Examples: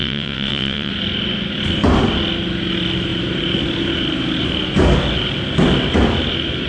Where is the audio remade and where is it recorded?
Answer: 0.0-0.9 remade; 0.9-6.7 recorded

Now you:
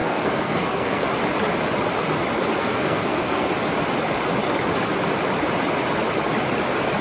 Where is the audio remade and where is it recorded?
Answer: 0.0-1.0 remade; 1.0-2.6 recorded; 2.6-3.5 remade; 3.5-7.0 recorded